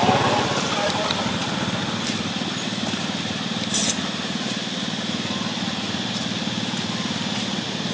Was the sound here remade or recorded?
recorded